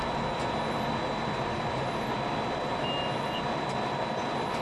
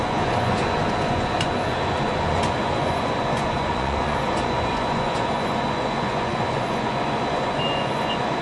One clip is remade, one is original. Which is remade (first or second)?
second